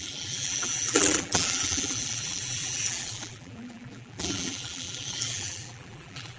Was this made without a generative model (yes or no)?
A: no